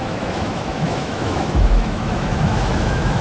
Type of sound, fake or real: fake